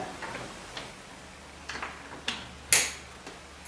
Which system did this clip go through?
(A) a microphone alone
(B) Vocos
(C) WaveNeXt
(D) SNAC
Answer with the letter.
A